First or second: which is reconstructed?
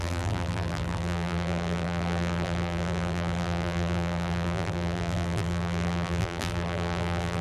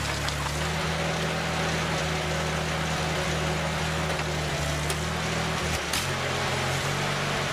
first